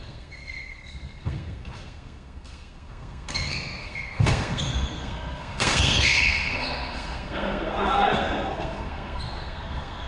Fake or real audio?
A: fake